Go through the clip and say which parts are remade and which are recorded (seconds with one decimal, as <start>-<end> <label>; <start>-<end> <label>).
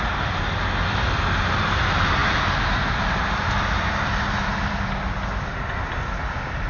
0.0-6.7 recorded